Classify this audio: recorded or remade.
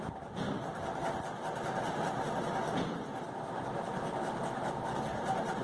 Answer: recorded